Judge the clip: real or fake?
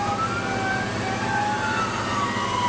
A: real